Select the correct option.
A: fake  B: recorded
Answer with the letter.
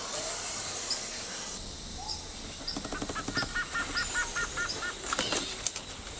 B